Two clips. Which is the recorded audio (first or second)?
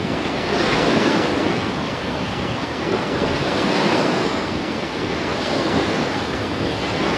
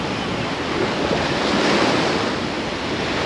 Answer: second